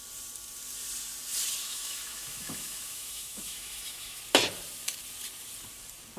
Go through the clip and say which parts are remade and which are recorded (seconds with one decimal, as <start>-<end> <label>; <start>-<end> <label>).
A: 0.0-1.6 recorded; 1.6-4.2 remade; 4.2-6.2 recorded